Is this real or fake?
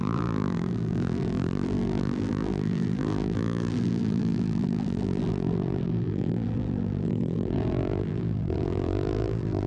fake